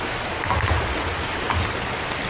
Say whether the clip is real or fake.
real